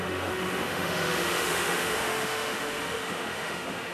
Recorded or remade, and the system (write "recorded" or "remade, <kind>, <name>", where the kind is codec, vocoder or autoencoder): remade, autoencoder, DAC-VAE